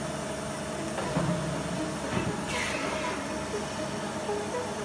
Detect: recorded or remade recorded